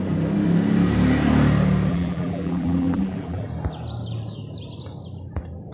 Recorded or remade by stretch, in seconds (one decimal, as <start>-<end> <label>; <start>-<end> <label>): 0.0-1.9 recorded; 1.9-3.5 remade; 3.5-5.7 recorded